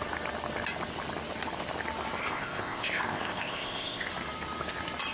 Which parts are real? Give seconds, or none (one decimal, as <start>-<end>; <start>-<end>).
0.0-2.2; 4.1-5.1